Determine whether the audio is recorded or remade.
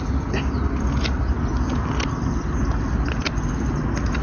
recorded